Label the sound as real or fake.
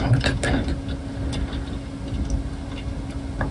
real